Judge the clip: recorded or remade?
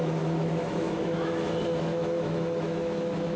remade